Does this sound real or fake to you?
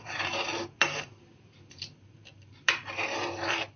fake